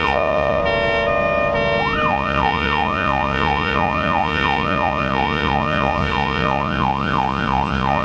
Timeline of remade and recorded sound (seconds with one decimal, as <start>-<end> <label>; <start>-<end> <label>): 0.0-0.6 remade; 0.6-2.1 recorded; 2.1-8.0 remade